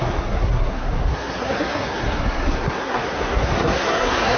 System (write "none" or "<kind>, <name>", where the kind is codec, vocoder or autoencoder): codec, SNAC